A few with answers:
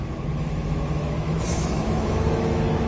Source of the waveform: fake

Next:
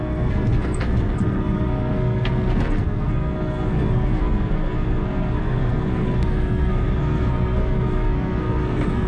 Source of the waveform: fake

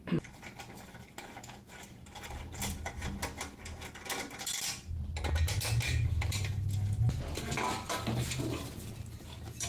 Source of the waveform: real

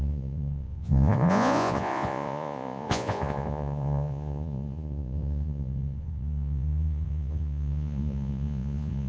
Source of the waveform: fake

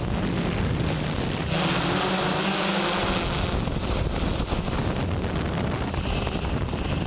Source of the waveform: real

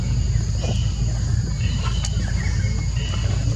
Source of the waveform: real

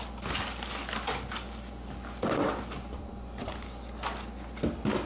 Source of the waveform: real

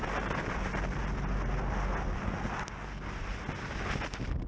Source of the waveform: real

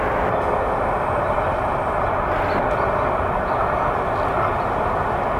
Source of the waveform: real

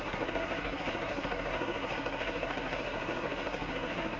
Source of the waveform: fake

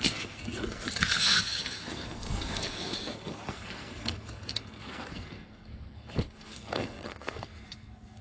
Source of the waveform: fake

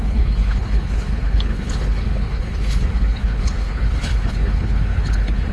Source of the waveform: fake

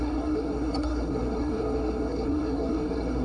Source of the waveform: fake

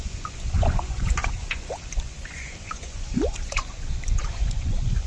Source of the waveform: fake